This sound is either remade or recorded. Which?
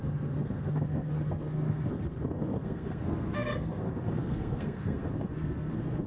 remade